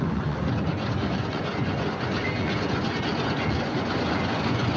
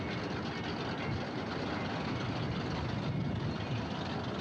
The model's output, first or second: first